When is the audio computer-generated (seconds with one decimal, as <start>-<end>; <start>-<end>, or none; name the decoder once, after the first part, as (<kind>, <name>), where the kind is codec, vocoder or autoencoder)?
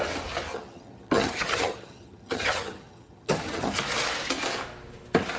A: 0.5-3.7 (vocoder, HiFi-GAN)